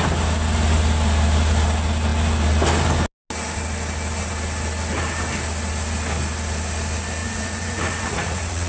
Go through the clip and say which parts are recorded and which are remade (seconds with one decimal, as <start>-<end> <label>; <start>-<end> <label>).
0.0-7.2 recorded; 7.2-8.7 remade